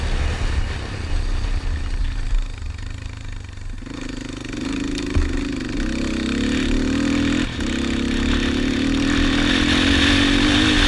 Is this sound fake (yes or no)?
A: no